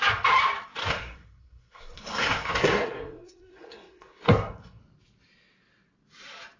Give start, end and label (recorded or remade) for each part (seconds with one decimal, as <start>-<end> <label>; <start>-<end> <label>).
0.0-0.8 recorded; 0.8-4.8 remade; 4.8-6.6 recorded